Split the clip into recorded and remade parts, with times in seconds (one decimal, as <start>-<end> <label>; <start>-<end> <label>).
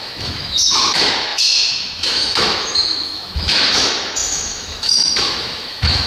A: 0.0-6.1 remade